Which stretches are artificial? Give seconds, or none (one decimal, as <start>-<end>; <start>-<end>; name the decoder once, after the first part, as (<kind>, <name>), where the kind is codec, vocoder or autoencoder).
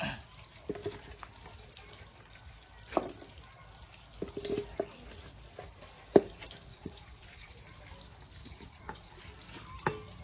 6.7-7.6 (vocoder, Vocos); 8.4-9.2